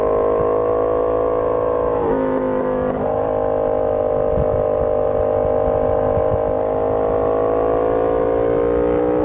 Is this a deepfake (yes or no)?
no